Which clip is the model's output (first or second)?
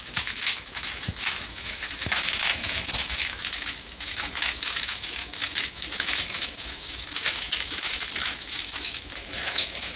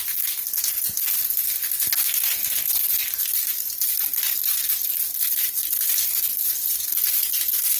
first